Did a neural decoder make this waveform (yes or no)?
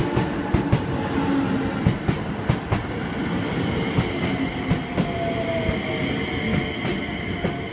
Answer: no